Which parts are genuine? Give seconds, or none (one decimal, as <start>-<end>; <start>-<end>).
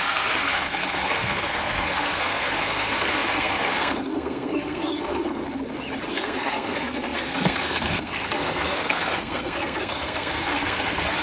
5.4-6.1